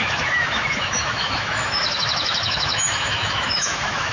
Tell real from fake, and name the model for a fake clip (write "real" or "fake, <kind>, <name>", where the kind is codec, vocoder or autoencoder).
fake, autoencoder, DAC-VAE